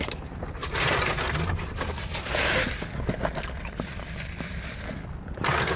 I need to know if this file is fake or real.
real